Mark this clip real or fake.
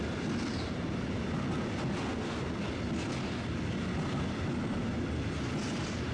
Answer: real